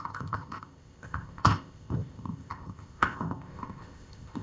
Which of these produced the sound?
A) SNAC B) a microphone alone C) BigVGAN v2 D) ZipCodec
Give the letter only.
D